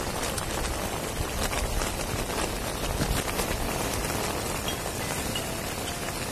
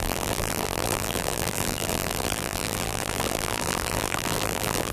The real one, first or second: first